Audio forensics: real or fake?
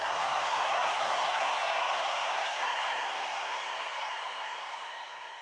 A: fake